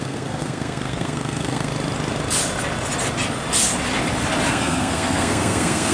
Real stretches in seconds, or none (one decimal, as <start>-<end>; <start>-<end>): 1.7-4.5